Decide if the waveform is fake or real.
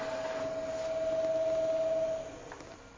real